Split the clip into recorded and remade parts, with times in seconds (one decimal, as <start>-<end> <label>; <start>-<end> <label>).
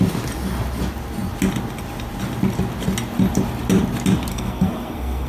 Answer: 0.0-4.3 recorded; 4.3-5.3 remade